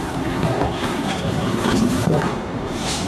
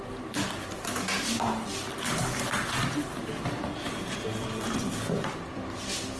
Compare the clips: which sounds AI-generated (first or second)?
first